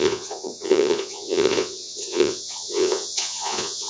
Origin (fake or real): fake